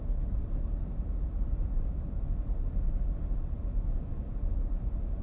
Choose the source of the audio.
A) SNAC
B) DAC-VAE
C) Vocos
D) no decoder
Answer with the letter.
D